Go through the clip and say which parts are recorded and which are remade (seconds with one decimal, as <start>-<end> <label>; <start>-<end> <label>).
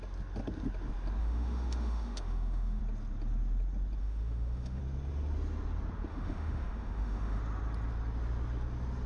0.0-1.2 recorded; 1.2-2.8 remade; 2.8-4.0 recorded; 4.0-4.8 remade; 4.8-6.1 recorded; 6.1-7.4 remade; 7.4-9.1 recorded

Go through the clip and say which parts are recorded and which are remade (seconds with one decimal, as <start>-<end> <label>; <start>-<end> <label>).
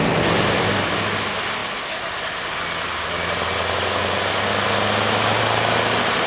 0.0-6.3 recorded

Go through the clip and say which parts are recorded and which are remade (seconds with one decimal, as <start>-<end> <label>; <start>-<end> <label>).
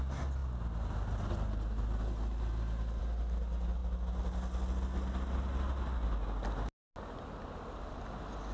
0.0-8.5 recorded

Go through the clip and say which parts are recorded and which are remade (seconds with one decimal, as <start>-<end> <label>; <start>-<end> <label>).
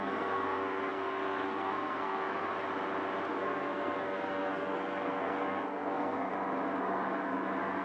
0.0-2.5 remade; 2.5-3.3 recorded; 3.3-6.3 remade; 6.3-6.8 recorded; 6.8-7.8 remade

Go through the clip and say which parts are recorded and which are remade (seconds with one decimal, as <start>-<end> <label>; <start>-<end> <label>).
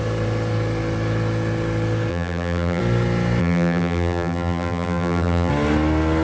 0.0-2.1 recorded; 2.1-2.8 remade; 2.8-3.4 recorded; 3.4-5.5 remade; 5.5-6.2 recorded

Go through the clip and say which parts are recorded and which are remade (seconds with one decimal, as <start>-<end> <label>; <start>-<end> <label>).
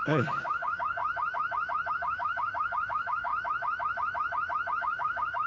0.0-1.0 remade; 1.0-1.9 recorded; 1.9-3.3 remade; 3.3-4.8 recorded; 4.8-5.5 remade